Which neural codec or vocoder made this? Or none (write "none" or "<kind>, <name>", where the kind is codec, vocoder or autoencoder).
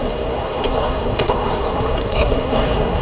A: codec, SNAC